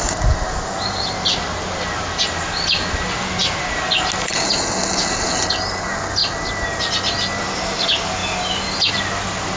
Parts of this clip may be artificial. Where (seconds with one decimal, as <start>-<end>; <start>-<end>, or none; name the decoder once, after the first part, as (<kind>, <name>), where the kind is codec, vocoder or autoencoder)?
none